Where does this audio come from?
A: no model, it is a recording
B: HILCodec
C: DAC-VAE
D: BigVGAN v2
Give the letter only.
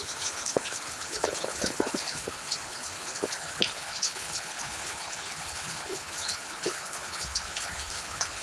B